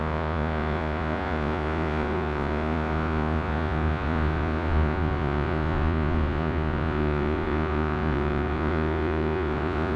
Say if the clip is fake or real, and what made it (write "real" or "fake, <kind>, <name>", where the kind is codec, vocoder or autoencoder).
fake, vocoder, Vocos